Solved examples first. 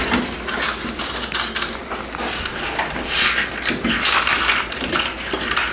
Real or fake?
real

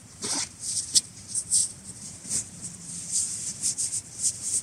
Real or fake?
fake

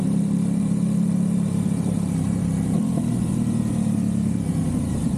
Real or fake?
fake